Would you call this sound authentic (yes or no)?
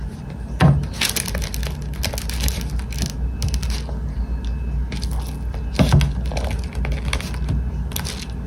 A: yes